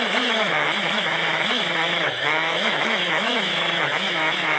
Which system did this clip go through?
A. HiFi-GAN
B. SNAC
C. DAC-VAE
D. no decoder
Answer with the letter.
C